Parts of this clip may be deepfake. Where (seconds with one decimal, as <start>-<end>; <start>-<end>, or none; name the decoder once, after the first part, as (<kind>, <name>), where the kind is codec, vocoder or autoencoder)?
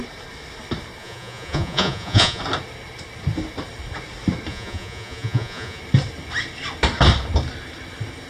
1.0-2.4 (vocoder, Vocos); 4.5-5.8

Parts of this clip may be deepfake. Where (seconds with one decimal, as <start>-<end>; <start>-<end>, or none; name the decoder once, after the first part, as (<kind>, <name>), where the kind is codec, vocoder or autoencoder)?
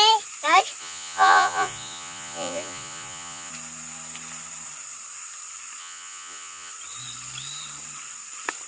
0.8-3.5 (vocoder, Vocos); 5.8-6.7